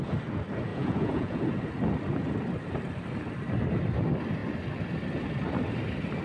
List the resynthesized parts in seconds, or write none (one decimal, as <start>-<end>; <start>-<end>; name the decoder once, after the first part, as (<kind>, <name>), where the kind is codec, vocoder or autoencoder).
0.7-1.4 (vocoder, Vocos)